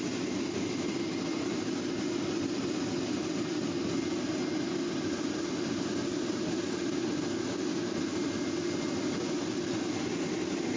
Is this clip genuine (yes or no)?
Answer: yes